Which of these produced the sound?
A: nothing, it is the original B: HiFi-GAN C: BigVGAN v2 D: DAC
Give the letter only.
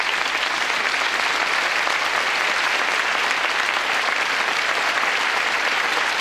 C